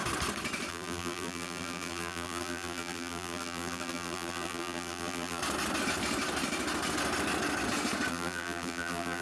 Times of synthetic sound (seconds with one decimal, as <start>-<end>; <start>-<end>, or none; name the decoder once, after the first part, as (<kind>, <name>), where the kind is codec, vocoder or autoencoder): 0.7-5.4 (vocoder, BigVGAN v2); 8.1-9.2